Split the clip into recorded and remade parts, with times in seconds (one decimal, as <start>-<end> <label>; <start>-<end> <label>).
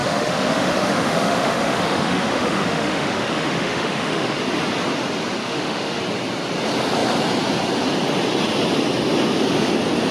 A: 0.0-4.4 remade; 4.4-5.4 recorded; 5.4-6.0 remade; 6.0-10.1 recorded